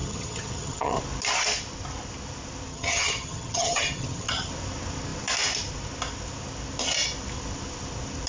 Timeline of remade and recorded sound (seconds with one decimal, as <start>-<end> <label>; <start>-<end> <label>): 0.0-1.0 remade; 1.0-2.7 recorded; 2.7-4.5 remade; 4.5-8.3 recorded